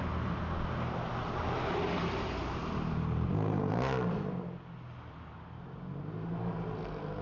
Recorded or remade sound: recorded